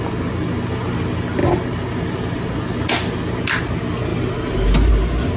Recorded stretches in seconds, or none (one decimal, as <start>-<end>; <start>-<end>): 0.0-5.4